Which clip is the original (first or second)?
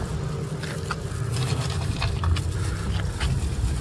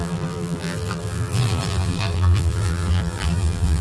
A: first